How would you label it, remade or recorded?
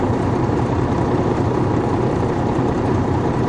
remade